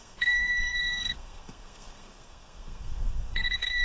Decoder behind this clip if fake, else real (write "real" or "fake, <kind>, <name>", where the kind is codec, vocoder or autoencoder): fake, codec, SNAC